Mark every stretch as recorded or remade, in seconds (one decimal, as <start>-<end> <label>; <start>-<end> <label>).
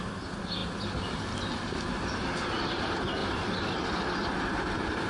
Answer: 0.0-5.1 recorded